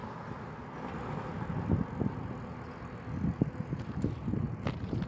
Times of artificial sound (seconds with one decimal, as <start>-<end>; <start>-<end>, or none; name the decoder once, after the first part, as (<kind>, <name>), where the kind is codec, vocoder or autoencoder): none